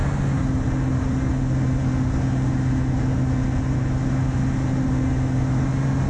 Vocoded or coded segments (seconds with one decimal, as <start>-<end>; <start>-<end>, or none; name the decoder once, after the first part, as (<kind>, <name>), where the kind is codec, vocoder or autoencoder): none